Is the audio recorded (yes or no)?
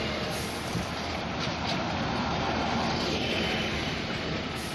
no